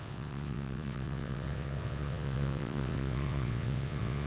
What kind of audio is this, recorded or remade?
remade